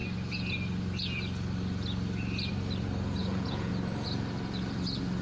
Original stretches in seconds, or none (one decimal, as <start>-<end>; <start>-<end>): 0.0-3.2; 3.7-5.2